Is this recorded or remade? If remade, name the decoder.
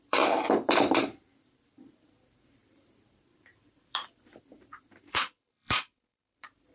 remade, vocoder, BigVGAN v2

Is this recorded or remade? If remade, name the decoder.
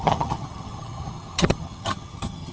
remade, vocoder, HiFi-GAN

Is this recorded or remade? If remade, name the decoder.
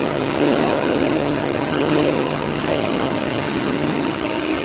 remade, vocoder, HiFi-GAN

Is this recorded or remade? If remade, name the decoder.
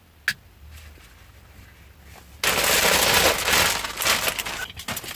recorded